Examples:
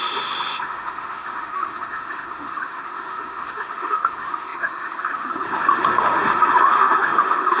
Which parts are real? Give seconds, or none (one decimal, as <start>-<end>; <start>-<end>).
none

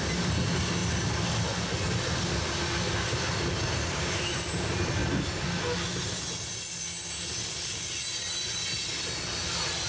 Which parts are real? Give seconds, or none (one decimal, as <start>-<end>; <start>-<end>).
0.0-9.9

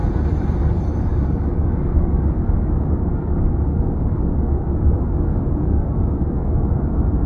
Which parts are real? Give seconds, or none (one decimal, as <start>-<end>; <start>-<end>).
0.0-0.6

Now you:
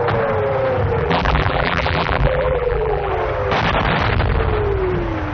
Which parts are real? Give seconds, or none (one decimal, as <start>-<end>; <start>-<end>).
0.0-1.0; 3.1-5.3

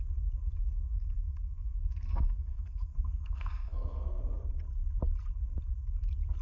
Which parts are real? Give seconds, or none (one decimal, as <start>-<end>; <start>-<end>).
0.0-0.6; 4.2-6.4